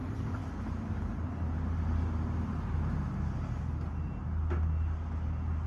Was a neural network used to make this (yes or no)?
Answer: no